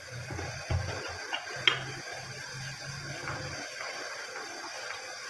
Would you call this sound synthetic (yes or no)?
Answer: no